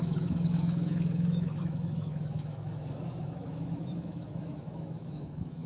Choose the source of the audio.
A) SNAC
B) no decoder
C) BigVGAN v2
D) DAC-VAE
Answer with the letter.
D